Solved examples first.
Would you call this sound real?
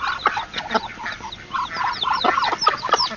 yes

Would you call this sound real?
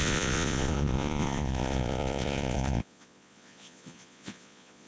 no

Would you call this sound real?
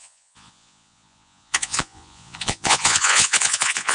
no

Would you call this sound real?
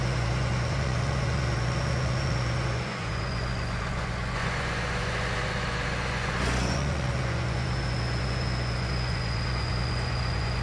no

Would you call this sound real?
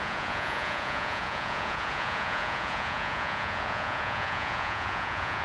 no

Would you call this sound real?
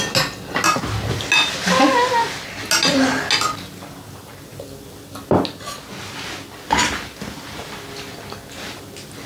yes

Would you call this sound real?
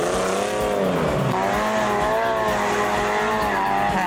yes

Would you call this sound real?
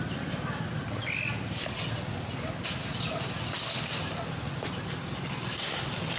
yes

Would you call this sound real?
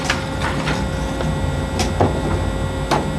yes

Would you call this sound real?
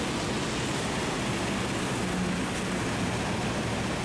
yes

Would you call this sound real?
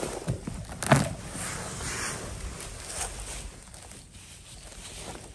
yes